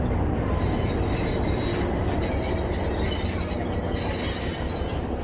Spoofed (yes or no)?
no